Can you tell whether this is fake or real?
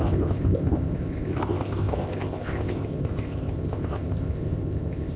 fake